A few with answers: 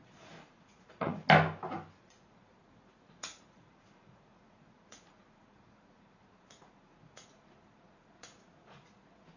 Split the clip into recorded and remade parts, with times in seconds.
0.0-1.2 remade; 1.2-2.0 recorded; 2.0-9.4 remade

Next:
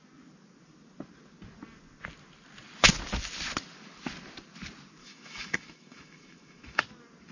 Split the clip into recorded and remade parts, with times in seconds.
0.0-5.0 recorded; 5.0-6.8 remade; 6.8-7.3 recorded

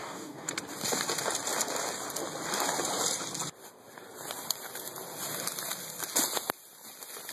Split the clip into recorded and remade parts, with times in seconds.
0.0-0.5 remade; 0.5-7.3 recorded

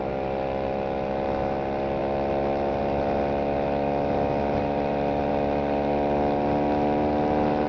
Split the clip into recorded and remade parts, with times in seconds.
0.0-7.7 recorded

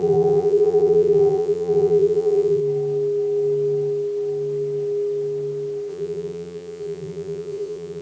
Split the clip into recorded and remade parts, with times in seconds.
0.0-2.6 remade; 2.6-5.9 recorded; 5.9-8.0 remade

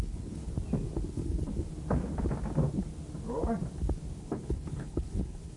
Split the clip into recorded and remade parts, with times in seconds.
0.0-0.5 remade; 0.5-1.1 recorded; 1.1-1.5 remade; 1.5-4.2 recorded; 4.2-5.6 remade

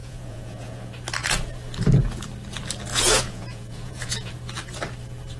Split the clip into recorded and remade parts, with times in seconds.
0.0-0.9 remade; 0.9-2.9 recorded; 2.9-4.3 remade; 4.3-5.4 recorded

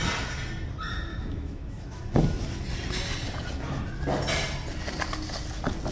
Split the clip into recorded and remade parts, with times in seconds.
0.0-1.1 recorded; 1.1-2.0 remade; 2.0-5.9 recorded